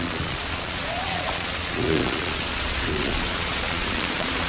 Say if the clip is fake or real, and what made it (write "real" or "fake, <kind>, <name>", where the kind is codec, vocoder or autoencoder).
fake, vocoder, Vocos